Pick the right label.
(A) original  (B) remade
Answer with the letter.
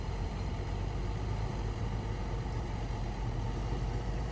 B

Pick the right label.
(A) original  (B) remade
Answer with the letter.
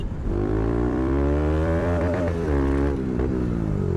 B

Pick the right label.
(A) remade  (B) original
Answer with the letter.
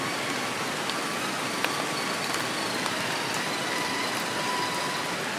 B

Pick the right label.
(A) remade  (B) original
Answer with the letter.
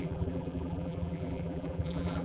A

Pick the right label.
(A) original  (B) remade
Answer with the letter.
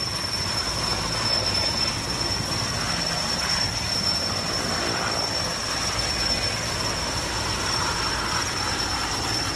A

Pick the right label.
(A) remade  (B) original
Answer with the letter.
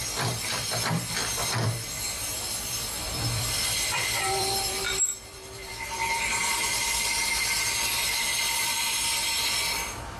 A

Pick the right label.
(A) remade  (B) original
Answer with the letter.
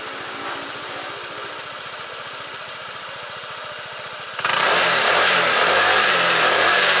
A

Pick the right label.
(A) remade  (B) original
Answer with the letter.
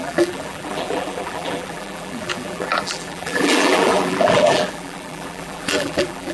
A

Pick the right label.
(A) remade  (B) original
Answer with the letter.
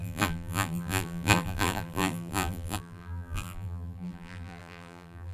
A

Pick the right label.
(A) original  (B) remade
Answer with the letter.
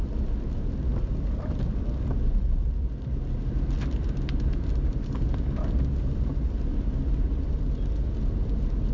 B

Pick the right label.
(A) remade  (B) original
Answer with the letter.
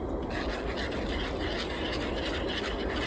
B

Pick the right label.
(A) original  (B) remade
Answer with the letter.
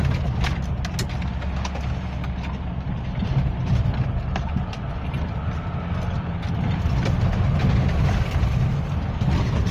A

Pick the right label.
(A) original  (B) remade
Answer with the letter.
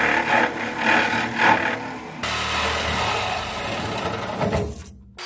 A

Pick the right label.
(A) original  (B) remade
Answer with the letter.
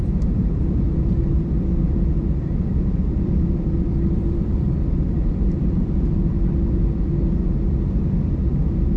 B